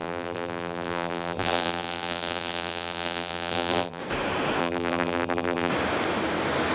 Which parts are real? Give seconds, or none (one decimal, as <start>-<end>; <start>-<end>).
4.0-4.6; 5.7-6.7